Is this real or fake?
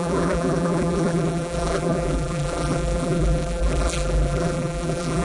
fake